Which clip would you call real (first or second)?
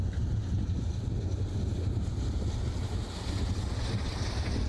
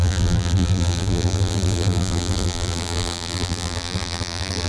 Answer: first